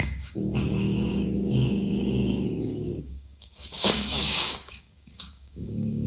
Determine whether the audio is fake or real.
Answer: fake